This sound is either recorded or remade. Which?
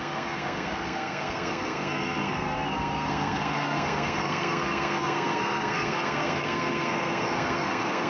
remade